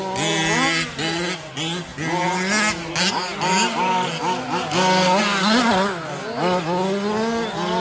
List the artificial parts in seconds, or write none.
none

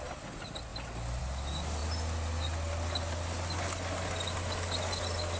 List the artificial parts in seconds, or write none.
none

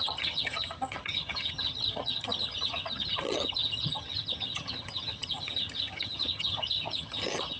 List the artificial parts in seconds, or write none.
0.0-7.6 (vocoder, HiFi-GAN)

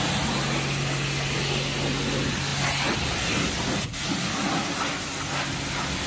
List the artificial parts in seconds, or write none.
none

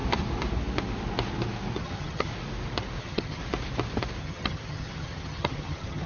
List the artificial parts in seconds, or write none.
1.8-2.3 (vocoder, HiFi-GAN); 3.0-3.4; 4.2-6.1

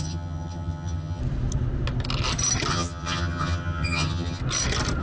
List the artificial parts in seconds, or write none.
0.0-1.2 (vocoder, HiFi-GAN); 2.7-4.4